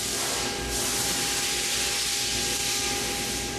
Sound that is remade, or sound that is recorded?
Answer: recorded